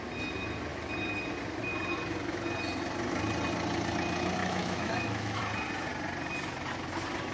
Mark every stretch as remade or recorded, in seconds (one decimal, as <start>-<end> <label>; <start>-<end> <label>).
0.0-4.4 recorded; 4.4-5.4 remade; 5.4-7.3 recorded